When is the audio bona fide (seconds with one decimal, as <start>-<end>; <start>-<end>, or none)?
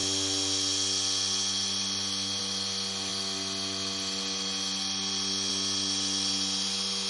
0.0-7.1